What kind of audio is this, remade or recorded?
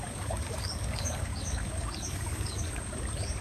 remade